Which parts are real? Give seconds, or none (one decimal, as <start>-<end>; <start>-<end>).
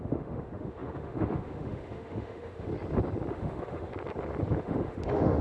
2.7-3.3; 3.9-4.6